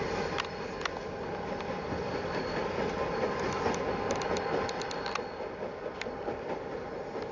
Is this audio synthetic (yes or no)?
no